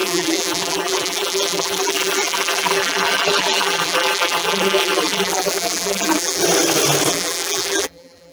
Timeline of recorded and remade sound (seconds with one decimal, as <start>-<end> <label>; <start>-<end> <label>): 0.0-6.4 remade; 6.4-7.1 recorded; 7.1-8.3 remade